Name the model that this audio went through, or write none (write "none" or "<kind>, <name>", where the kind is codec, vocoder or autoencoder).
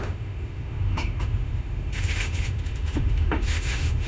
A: autoencoder, DAC-VAE